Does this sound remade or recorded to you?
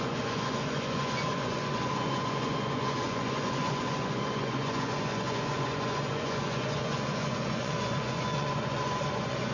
remade